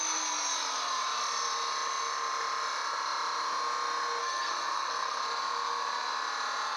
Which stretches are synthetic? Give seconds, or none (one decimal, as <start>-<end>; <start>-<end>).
4.2-5.2